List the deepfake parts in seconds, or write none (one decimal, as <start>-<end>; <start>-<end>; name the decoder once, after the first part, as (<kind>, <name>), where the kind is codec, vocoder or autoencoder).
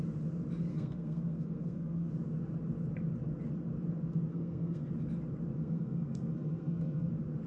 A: 0.7-2.1 (codec, SNAC); 4.3-4.9; 5.6-7.1